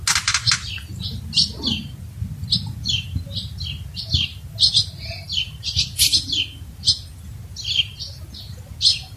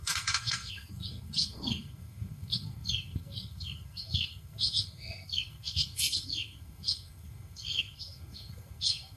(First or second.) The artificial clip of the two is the second